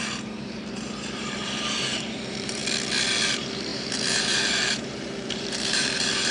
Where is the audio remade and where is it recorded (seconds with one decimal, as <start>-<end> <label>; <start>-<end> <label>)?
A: 0.0-2.6 remade; 2.6-3.3 recorded; 3.3-6.3 remade